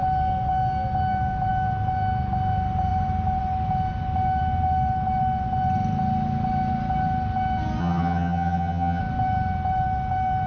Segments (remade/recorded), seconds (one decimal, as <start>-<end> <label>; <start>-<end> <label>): 0.0-7.8 recorded; 7.8-9.0 remade; 9.0-10.5 recorded